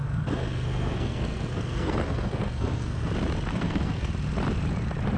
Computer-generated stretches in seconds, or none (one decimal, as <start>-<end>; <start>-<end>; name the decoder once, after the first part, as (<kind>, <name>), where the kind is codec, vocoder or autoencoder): 0.0-3.1 (codec, SNAC); 3.5-4.1